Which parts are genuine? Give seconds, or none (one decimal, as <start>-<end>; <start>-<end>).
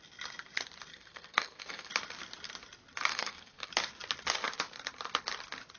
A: 0.0-0.9; 1.9-3.1; 3.7-5.8